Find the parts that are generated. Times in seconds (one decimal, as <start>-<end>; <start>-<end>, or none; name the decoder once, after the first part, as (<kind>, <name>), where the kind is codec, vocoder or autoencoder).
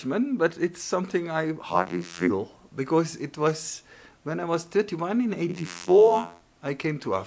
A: 1.7-2.3 (vocoder, BigVGAN v2); 5.5-6.4